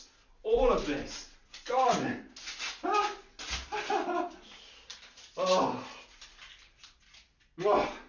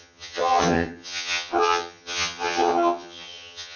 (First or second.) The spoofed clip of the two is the second